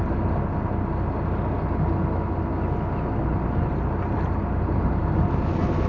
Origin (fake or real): real